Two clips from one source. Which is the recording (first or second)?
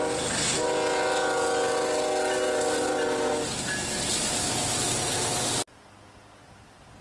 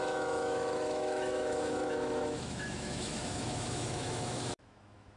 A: first